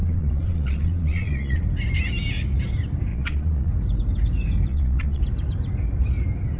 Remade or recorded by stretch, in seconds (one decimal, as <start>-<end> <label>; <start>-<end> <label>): 0.0-1.6 remade; 1.6-3.1 recorded; 3.1-3.7 remade; 3.7-4.7 recorded; 4.7-5.2 remade; 5.2-6.6 recorded